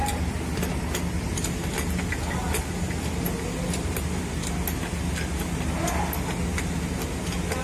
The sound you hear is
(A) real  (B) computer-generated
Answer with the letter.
A